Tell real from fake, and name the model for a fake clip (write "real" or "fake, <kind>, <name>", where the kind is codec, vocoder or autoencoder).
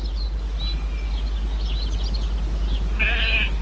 real